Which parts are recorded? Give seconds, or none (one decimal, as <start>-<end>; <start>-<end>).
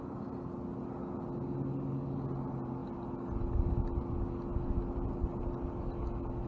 0.0-6.5